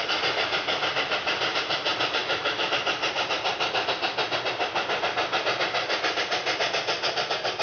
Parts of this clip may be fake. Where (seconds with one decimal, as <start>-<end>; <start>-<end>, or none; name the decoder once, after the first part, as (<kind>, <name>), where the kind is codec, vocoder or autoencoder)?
2.2-2.7 (autoencoder, DAC-VAE)

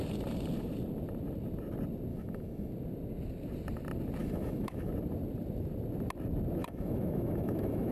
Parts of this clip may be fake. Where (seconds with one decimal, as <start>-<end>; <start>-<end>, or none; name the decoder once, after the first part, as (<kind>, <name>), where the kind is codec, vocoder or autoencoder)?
2.1-2.7 (autoencoder, DAC-VAE); 4.2-4.9; 6.6-7.9

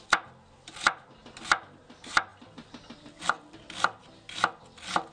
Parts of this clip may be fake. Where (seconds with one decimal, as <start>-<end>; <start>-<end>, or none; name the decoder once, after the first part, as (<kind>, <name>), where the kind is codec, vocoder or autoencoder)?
none